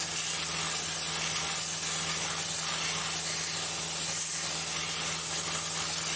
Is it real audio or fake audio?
real